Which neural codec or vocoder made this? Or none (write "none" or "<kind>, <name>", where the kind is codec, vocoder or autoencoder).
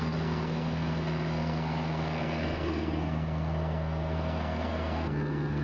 codec, SNAC